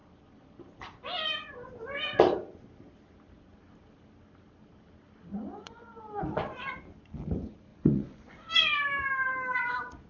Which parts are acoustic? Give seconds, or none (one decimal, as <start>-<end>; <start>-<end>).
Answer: 0.0-5.3; 6.0-7.7; 8.5-10.1